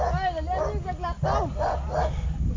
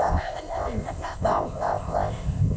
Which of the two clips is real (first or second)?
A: first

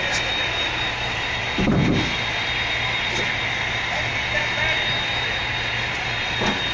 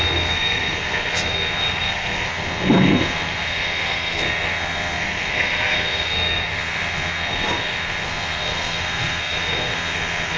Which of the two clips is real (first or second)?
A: first